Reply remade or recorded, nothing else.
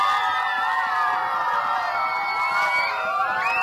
recorded